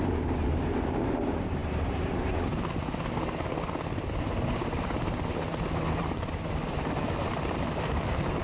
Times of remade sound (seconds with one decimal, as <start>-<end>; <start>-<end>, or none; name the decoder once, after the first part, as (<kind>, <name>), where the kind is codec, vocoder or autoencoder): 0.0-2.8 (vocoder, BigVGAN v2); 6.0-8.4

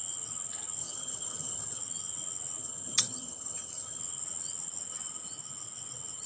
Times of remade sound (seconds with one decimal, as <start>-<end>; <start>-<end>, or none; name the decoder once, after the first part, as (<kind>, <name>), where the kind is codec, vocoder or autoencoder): 0.8-1.8 (vocoder, HiFi-GAN); 2.6-4.0

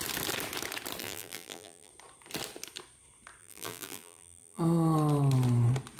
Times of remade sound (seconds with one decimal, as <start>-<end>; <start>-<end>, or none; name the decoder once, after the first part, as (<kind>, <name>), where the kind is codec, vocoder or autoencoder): 1.0-1.9 (vocoder, BigVGAN v2); 3.4-4.6